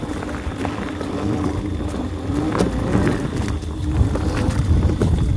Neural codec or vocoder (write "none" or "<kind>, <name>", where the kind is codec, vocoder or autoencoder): none